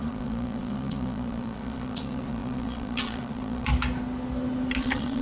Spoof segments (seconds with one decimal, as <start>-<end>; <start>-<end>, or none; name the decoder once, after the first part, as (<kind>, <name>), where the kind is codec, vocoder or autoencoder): 0.0-3.7 (vocoder, Vocos); 4.8-5.2